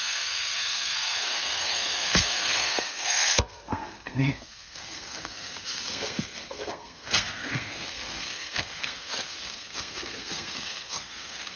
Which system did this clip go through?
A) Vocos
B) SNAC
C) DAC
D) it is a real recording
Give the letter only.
B